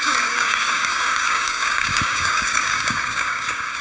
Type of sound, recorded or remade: remade